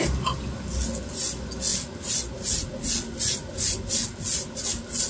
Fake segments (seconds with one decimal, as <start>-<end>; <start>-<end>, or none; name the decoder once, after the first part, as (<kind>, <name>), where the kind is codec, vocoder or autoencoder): none